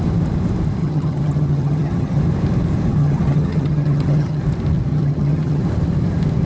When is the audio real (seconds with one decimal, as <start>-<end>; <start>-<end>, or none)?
0.0-0.8; 2.2-2.9; 4.4-4.9; 5.6-6.5